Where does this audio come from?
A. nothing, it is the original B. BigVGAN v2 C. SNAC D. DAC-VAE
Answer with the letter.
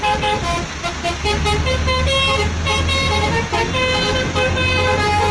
A